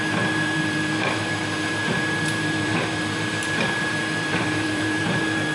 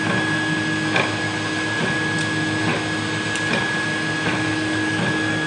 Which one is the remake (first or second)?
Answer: first